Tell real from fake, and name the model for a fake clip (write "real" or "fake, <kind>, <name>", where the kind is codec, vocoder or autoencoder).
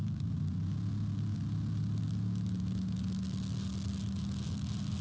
real